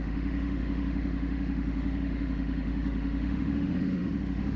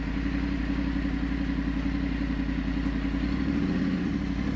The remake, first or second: first